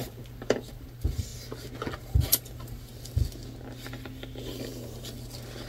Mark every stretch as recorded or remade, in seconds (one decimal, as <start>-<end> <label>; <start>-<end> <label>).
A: 0.0-1.3 remade; 1.3-2.0 recorded; 2.0-2.9 remade; 2.9-5.7 recorded